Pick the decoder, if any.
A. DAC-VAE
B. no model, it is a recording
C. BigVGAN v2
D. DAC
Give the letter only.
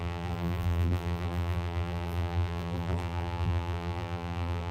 C